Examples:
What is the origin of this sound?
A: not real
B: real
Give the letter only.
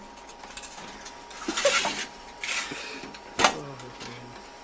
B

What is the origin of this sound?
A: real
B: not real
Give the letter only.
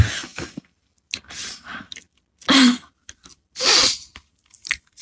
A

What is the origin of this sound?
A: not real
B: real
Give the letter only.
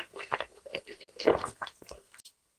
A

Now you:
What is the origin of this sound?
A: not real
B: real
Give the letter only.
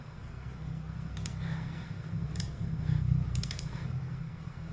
A